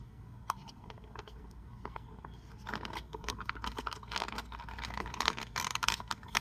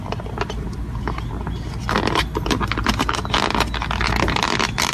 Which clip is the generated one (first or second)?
first